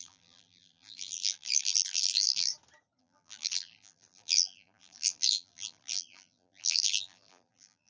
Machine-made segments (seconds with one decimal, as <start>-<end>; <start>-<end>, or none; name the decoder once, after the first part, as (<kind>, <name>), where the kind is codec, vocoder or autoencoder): 0.0-2.5 (vocoder, BigVGAN v2); 3.0-7.9